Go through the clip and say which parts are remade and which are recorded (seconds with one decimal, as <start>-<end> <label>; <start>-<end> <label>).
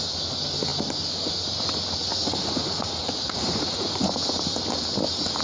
0.0-2.1 recorded; 2.1-4.0 remade; 4.0-5.4 recorded